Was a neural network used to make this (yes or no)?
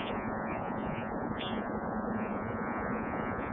yes